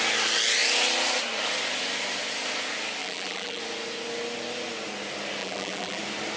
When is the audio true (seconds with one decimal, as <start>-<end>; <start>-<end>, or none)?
0.0-3.0; 3.6-5.4; 6.0-6.4

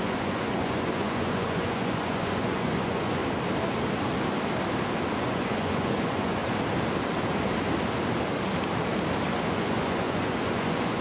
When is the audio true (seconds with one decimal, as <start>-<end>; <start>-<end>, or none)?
3.2-5.2; 6.4-9.5

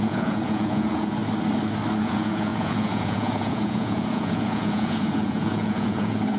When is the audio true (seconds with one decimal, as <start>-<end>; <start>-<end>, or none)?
1.2-2.0

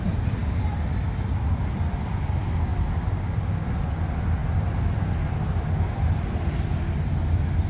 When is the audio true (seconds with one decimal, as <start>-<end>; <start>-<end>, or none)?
0.0-7.7

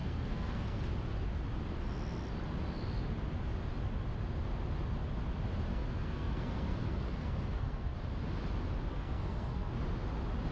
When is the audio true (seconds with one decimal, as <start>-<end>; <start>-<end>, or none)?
0.8-5.7; 7.9-8.9; 9.7-10.5

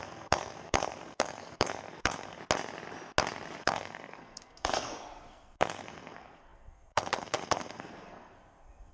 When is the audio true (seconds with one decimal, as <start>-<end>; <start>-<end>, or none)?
2.4-3.6

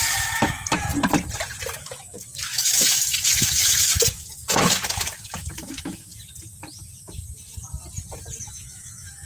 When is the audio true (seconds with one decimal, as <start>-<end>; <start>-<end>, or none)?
0.9-1.8; 6.1-8.5

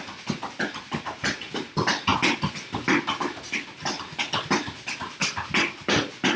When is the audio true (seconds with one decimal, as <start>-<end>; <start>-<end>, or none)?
0.0-6.4